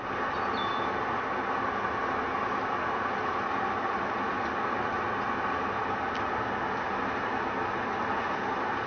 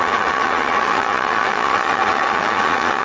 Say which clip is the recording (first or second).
first